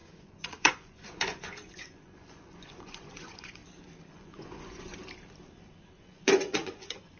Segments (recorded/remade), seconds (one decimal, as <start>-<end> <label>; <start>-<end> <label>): 0.0-3.6 remade; 3.6-4.1 recorded; 4.1-5.0 remade; 5.0-6.0 recorded; 6.0-7.2 remade